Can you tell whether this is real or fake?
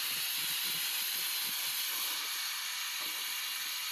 real